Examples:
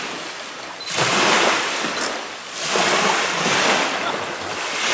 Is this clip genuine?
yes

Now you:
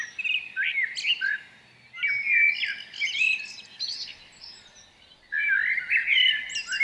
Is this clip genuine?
yes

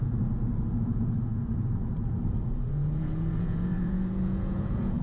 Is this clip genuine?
no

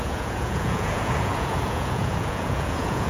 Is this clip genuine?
no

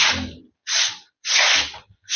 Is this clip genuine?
yes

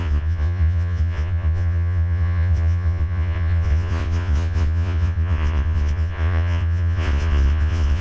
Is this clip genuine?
no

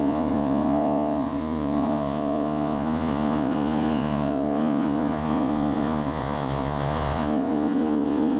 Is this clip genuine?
no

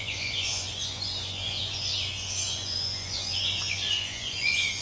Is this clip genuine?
no